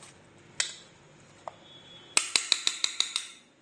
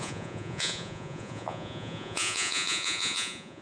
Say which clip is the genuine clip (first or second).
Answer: first